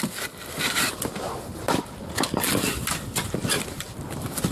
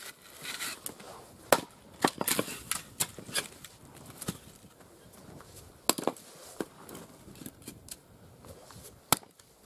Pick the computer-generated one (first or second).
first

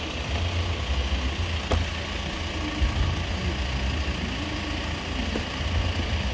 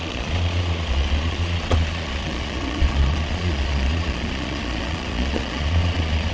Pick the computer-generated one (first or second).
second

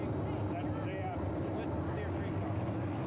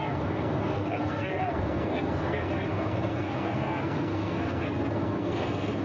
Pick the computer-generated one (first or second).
second